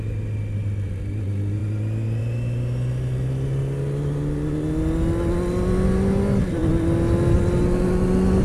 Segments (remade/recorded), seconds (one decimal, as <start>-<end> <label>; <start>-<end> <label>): 0.0-8.4 recorded